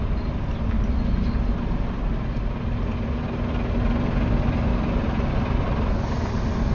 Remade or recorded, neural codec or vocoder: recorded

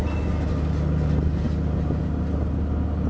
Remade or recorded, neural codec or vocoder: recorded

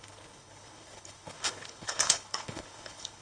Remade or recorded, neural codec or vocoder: remade, codec, HILCodec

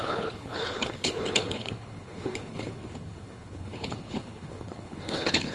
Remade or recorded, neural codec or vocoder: remade, codec, HILCodec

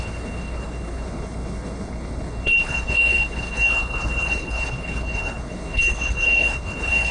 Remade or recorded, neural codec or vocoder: remade, codec, HILCodec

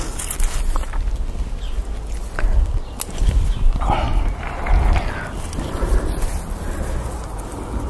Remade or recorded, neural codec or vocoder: recorded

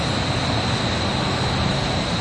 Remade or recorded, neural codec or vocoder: recorded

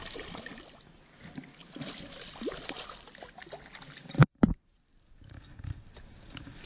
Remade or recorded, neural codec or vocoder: recorded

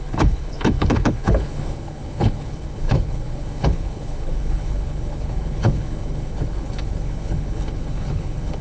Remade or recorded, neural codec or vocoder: remade, codec, HILCodec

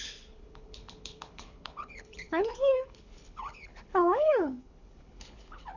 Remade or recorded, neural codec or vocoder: remade, codec, HILCodec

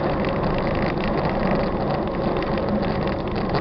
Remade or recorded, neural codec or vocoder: recorded